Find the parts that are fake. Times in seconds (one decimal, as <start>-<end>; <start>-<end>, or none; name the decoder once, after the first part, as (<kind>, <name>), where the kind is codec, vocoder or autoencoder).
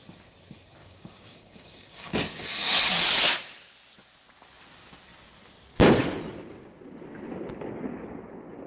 0.8-2.5 (codec, DAC)